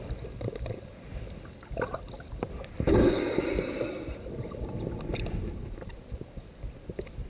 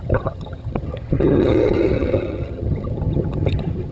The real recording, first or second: first